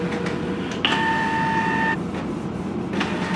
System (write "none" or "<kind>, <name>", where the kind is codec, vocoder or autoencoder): none